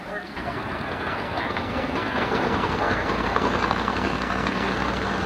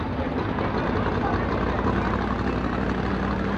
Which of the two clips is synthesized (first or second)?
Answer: first